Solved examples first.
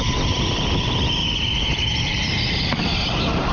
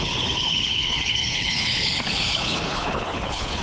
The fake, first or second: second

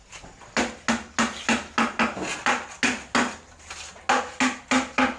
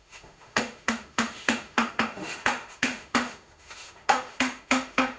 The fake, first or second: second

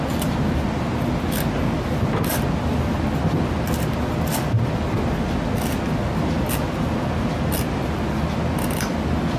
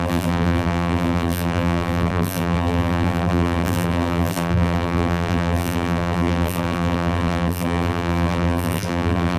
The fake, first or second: second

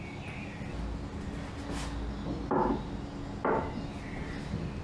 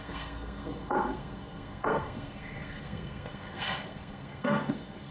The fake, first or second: second